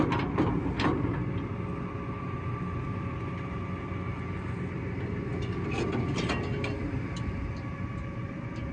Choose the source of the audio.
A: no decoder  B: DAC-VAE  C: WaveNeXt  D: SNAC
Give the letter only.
A